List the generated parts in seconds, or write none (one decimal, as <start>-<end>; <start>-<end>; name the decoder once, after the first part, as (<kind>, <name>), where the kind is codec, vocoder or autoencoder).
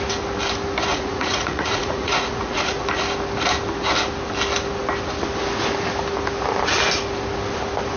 0.9-3.0 (vocoder, Vocos)